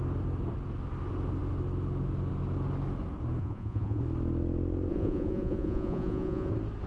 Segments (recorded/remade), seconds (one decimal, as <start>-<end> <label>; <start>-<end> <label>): 0.0-3.4 recorded; 3.4-4.0 remade; 4.0-4.9 recorded; 4.9-6.5 remade; 6.5-6.9 recorded